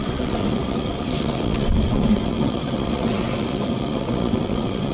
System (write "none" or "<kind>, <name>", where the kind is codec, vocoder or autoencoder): vocoder, WaveNeXt